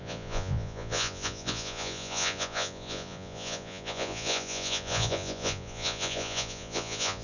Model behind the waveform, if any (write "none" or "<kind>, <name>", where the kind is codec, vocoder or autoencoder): vocoder, Vocos